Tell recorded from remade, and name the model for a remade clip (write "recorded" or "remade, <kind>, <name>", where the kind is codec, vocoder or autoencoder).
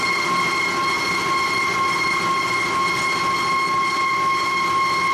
recorded